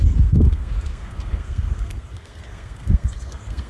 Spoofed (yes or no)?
yes